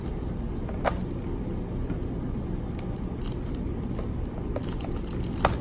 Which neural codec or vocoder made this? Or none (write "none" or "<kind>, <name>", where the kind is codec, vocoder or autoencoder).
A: none